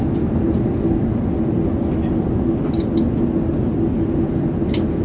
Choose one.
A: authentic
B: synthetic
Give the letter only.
A